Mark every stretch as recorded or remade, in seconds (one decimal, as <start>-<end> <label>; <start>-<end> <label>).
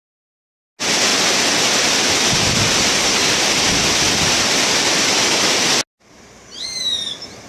0.0-7.5 recorded